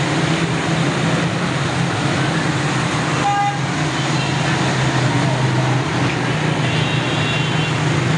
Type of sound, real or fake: real